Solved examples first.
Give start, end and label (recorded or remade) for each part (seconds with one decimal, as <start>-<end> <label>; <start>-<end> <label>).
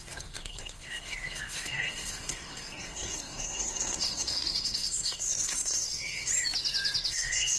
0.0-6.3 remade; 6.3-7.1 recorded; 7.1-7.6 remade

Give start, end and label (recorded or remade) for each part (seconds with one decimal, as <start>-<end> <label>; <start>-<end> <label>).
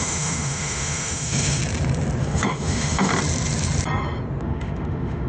0.0-1.6 remade; 1.6-2.2 recorded; 2.2-3.1 remade; 3.1-4.4 recorded; 4.4-5.3 remade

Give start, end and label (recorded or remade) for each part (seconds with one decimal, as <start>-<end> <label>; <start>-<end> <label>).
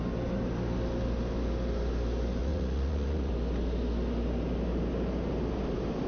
0.0-2.4 recorded; 2.4-3.3 remade; 3.3-6.1 recorded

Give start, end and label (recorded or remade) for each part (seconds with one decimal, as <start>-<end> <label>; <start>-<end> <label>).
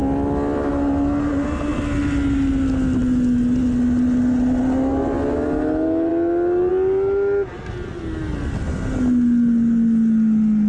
0.0-10.7 recorded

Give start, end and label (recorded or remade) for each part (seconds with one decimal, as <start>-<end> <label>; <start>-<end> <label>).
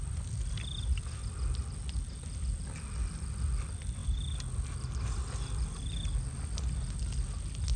0.0-7.8 recorded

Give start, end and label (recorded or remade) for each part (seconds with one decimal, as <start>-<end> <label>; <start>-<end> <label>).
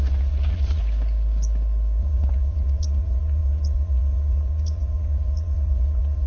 0.0-0.8 remade; 0.8-2.0 recorded; 2.0-6.3 remade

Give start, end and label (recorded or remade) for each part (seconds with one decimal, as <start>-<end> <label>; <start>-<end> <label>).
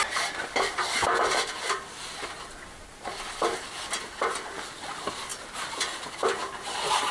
0.0-7.1 recorded